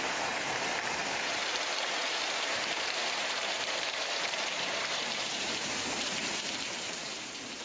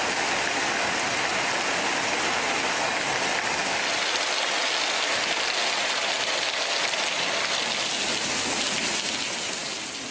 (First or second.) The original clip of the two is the second